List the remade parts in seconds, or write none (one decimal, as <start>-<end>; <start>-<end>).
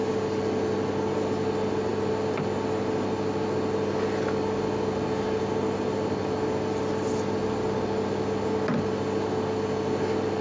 none